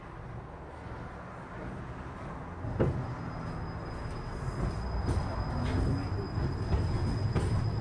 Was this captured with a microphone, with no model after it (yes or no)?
yes